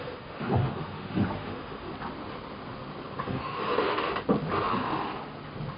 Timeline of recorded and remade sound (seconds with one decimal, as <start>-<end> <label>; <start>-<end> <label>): 0.0-1.9 remade; 1.9-3.2 recorded; 3.2-4.1 remade; 4.1-5.8 recorded